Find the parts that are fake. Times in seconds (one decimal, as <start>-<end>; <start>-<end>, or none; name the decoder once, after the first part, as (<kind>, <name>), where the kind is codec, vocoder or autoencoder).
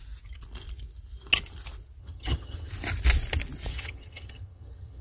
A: 2.0-2.7 (vocoder, HiFi-GAN); 3.7-5.0